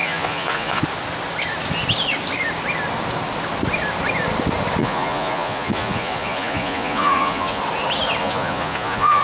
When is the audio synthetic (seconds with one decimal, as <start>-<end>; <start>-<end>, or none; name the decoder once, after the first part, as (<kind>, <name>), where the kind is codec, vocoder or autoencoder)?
0.0-0.8 (vocoder, Vocos); 4.8-7.6; 8.2-9.2

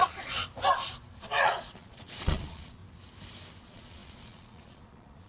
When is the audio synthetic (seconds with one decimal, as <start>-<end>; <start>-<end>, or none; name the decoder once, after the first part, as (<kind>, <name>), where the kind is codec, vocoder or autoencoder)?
0.0-0.4 (vocoder, Vocos); 1.2-2.8; 3.6-5.3

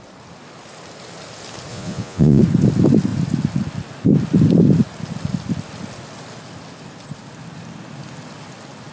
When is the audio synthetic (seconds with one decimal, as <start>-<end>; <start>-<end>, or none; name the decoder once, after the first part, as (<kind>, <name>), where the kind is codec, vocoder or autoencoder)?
1.7-2.4 (vocoder, Vocos)

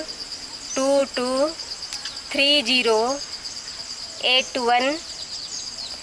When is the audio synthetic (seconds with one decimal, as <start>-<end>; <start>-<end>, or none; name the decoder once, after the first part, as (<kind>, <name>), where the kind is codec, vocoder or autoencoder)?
none

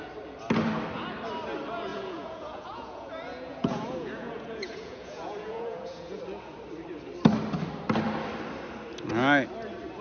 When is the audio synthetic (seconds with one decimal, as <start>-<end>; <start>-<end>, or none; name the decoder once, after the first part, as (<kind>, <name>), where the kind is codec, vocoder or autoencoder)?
1.9-6.2 (vocoder, Vocos)

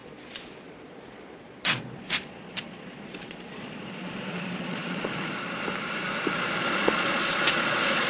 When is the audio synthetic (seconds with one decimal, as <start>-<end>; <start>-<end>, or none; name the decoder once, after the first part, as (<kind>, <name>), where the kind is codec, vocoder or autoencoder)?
0.0-5.1 (vocoder, Vocos); 6.7-8.1

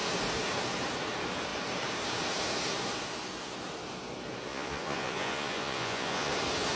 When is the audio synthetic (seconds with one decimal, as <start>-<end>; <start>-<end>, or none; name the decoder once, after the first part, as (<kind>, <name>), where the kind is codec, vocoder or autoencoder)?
4.5-6.3 (vocoder, Vocos)

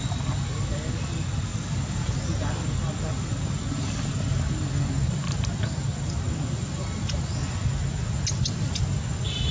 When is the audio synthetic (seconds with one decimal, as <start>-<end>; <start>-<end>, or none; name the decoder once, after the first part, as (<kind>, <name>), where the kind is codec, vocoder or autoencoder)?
none